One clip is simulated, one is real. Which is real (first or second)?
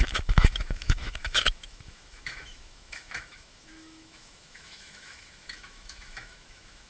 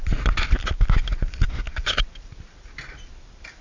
second